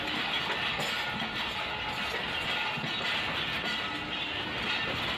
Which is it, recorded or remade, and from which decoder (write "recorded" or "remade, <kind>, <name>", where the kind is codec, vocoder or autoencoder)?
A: recorded